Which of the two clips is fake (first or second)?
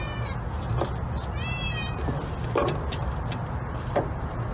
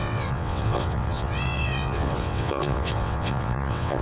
second